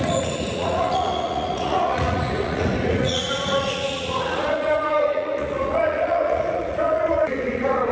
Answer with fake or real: fake